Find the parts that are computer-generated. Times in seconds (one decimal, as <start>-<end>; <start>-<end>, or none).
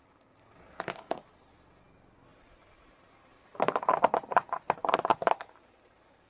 2.3-3.7; 4.8-6.3